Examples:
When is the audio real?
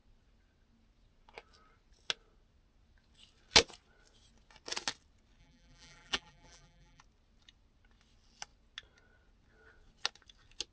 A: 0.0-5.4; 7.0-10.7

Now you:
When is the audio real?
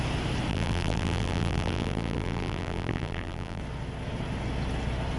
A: 0.0-0.5; 3.6-5.2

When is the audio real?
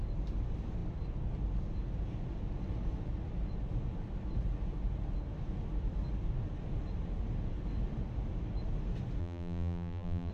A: 0.0-9.2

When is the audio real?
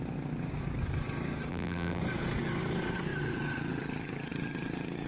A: 0.0-1.5; 2.0-5.1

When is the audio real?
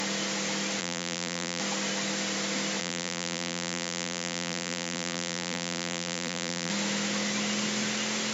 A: 0.0-0.8; 1.6-2.8; 6.7-8.3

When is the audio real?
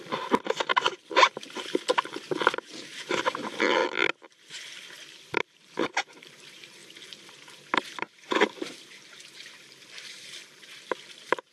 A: 3.8-5.4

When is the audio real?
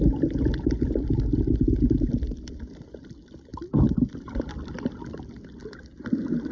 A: 0.0-3.5; 4.1-6.5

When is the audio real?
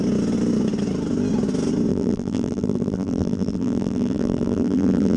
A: 0.0-1.9